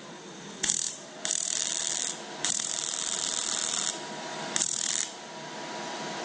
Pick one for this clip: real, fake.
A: real